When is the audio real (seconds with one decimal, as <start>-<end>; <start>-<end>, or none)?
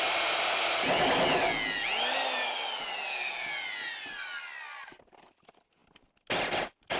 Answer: 0.0-7.0